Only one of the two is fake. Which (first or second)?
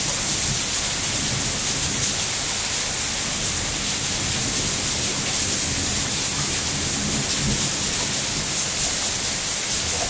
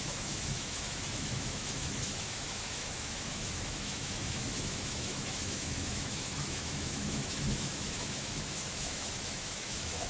second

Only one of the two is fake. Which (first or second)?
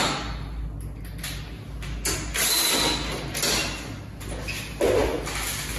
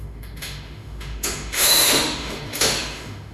second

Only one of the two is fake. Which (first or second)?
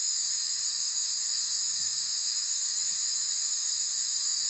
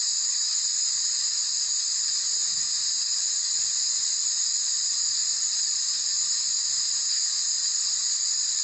first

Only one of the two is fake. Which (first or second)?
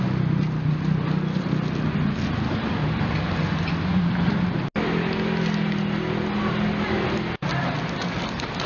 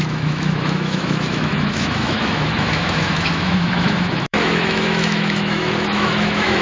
second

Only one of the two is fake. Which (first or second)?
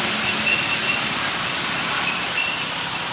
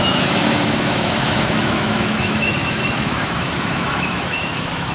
second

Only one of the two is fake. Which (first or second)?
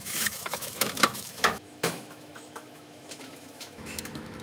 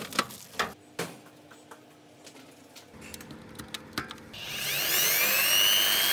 first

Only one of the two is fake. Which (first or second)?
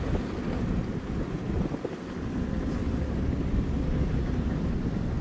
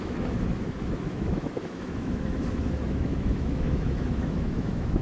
second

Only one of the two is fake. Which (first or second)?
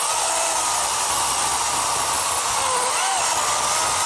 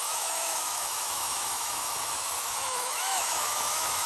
second